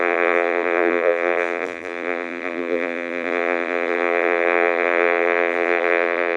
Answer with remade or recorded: remade